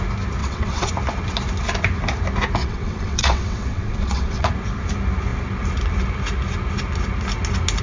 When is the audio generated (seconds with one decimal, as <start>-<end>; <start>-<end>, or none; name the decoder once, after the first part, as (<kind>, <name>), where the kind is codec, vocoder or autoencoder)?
0.4-0.9 (vocoder, WaveNeXt); 2.6-4.5